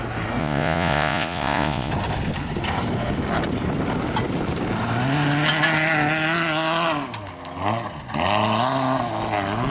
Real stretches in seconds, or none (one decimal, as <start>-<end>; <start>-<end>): 0.0-0.4; 1.9-9.7